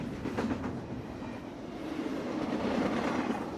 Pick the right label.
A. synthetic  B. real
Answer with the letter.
B